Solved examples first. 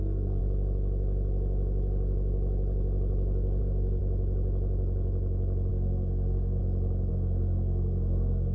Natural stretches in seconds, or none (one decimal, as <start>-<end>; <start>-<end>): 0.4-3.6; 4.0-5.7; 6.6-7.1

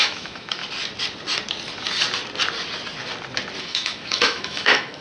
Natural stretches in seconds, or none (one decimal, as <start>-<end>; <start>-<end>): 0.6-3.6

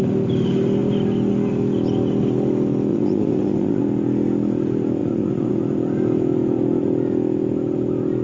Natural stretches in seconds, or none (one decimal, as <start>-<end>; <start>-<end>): 0.0-2.9; 3.8-5.0; 5.5-8.2